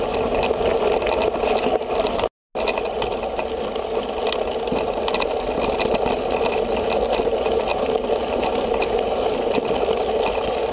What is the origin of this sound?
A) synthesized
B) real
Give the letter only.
B